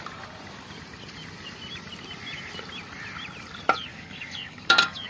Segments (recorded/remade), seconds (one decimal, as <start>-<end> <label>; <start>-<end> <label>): 0.0-3.9 recorded; 3.9-5.1 remade